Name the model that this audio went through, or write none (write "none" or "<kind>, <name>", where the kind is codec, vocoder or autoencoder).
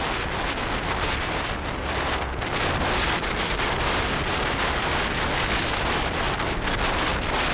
none